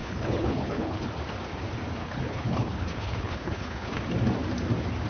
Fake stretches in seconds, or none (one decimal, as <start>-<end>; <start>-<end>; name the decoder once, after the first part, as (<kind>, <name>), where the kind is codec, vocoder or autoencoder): 0.0-1.1 (codec, HILCodec); 2.0-4.0